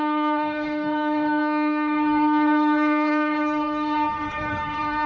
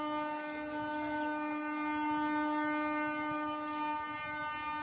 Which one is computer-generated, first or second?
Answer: first